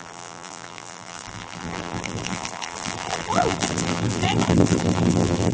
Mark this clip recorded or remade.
remade